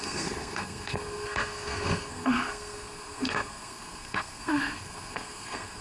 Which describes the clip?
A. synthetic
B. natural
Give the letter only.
A